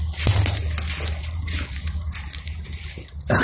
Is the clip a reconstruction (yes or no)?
no